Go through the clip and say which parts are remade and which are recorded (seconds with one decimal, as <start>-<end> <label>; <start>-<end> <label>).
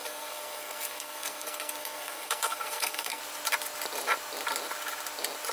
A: 0.0-3.2 remade; 3.2-5.5 recorded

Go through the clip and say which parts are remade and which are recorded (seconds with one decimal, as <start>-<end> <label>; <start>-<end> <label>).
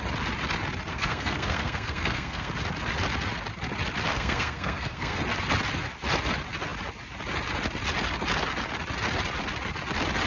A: 0.0-0.9 recorded; 0.9-2.5 remade; 2.5-4.1 recorded; 4.1-5.2 remade; 5.2-10.3 recorded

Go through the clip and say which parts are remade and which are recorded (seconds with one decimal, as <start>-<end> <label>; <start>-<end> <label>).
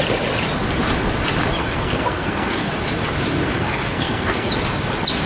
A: 0.0-1.6 recorded; 1.6-2.7 remade; 2.7-3.4 recorded; 3.4-4.5 remade; 4.5-5.3 recorded